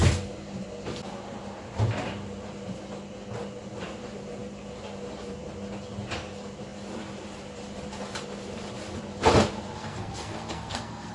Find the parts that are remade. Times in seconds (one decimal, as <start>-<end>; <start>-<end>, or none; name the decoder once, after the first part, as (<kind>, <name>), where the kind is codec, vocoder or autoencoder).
9.8-11.1 (codec, SNAC)